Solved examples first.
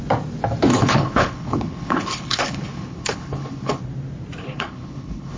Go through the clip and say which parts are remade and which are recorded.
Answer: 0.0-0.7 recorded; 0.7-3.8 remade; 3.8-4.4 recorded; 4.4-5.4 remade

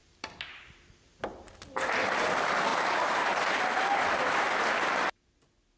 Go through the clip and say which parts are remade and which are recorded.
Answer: 0.0-0.6 remade; 0.6-2.7 recorded; 2.7-3.6 remade; 3.6-5.8 recorded

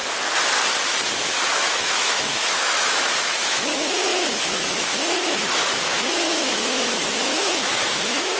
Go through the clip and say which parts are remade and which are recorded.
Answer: 0.0-1.5 recorded; 1.5-8.4 remade

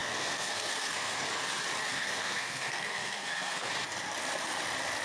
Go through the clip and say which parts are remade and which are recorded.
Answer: 0.0-1.2 remade; 1.2-1.9 recorded; 1.9-3.7 remade; 3.7-5.0 recorded